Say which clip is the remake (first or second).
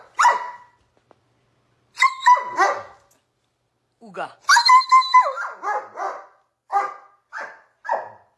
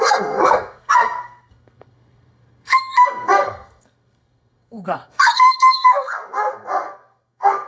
second